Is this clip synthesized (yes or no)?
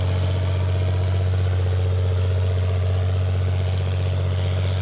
no